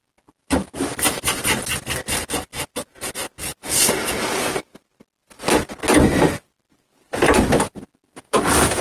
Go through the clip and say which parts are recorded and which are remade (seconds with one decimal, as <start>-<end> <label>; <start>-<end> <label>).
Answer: 0.0-3.5 recorded; 3.5-4.1 remade; 4.1-8.8 recorded